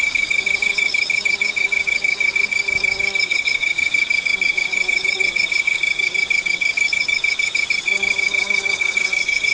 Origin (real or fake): fake